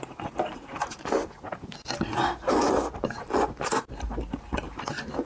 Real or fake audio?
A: real